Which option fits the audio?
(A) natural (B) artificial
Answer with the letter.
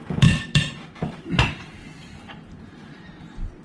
A